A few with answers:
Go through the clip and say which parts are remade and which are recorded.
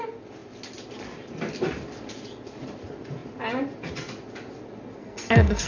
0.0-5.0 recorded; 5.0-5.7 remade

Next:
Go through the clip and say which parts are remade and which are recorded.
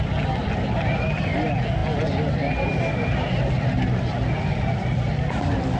0.0-5.8 recorded